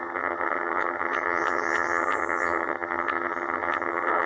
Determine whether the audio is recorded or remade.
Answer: remade